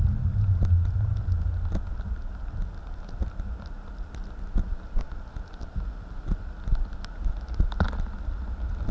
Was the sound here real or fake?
real